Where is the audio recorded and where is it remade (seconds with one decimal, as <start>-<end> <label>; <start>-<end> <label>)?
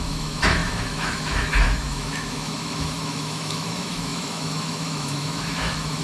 0.0-6.0 remade